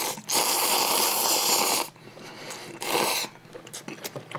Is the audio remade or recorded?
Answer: recorded